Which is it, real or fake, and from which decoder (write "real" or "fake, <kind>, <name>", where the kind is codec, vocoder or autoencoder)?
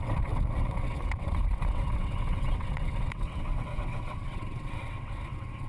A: fake, vocoder, WaveNeXt